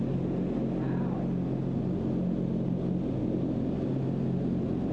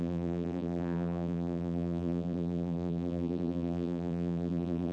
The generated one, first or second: second